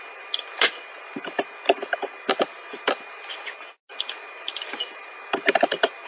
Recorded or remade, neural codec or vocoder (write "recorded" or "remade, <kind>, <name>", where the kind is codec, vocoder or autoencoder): recorded